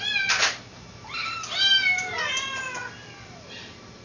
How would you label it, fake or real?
real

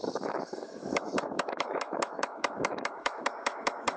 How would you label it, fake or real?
fake